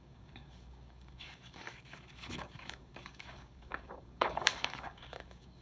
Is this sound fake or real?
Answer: fake